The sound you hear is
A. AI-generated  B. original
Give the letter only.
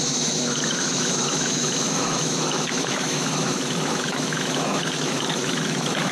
A